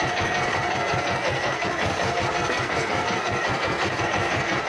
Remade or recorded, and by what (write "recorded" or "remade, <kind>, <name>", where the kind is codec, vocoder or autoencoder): remade, codec, SNAC